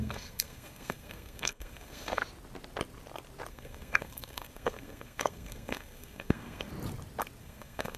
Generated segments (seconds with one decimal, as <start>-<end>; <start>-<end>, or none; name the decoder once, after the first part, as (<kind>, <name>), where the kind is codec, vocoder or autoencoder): 0.0-2.2 (codec, SNAC); 3.5-6.7; 7.4-8.0